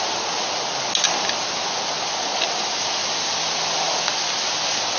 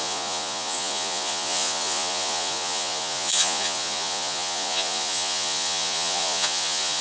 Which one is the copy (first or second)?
second